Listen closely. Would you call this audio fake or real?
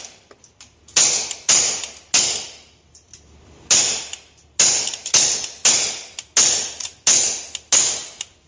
real